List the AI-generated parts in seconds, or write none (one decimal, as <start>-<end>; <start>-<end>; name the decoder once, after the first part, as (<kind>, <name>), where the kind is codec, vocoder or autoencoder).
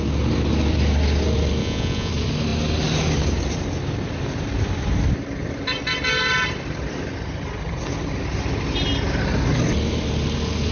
1.6-2.1 (vocoder, Vocos)